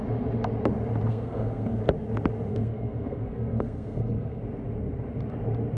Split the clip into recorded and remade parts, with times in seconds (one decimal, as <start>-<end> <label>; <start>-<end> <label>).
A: 0.0-1.1 recorded; 1.1-1.8 remade; 1.8-2.5 recorded; 2.5-4.4 remade; 4.4-5.8 recorded